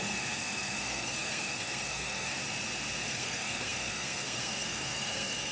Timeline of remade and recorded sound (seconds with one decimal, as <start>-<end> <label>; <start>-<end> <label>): 0.0-2.4 remade; 2.4-3.0 recorded; 3.0-5.5 remade